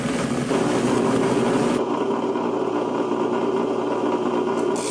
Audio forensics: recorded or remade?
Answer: recorded